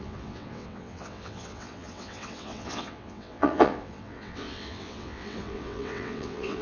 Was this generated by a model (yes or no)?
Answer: yes